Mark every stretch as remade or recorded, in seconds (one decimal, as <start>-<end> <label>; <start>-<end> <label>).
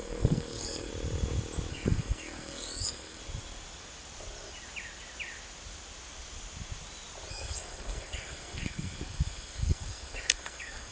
0.0-0.9 remade; 0.9-1.7 recorded; 1.7-3.2 remade; 3.2-7.3 recorded; 7.3-10.9 remade